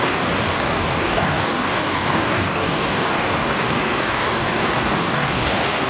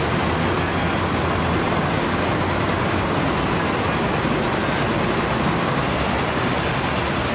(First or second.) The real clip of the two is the second